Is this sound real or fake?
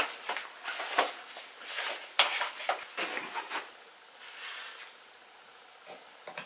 real